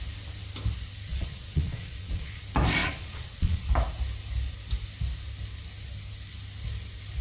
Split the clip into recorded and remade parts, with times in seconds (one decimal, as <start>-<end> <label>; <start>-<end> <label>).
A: 0.0-1.1 recorded; 1.1-2.4 remade; 2.4-2.8 recorded; 2.8-3.7 remade; 3.7-7.2 recorded